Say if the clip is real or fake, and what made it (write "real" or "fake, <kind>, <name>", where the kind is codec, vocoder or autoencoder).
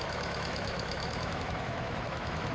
fake, autoencoder, DAC-VAE